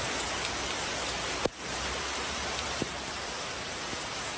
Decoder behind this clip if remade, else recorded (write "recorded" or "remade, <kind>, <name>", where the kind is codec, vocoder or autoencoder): recorded